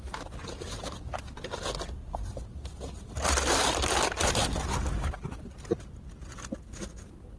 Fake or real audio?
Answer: real